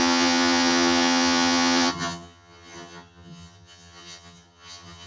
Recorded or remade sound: remade